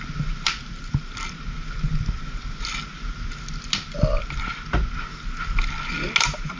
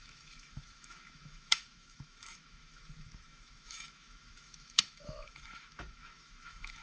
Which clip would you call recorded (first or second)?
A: first